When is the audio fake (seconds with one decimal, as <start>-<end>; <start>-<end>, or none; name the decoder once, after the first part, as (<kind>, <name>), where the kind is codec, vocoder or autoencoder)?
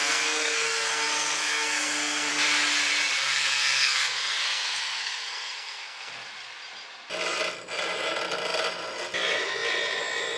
0.0-2.3 (codec, SNAC); 3.2-6.1